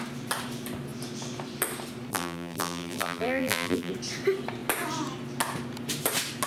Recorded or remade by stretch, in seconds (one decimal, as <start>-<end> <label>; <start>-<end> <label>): 0.0-2.1 recorded; 2.1-3.9 remade; 3.9-6.5 recorded